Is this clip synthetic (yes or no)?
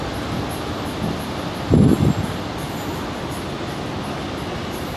no